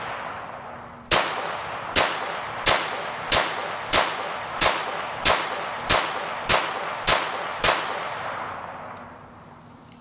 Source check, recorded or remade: recorded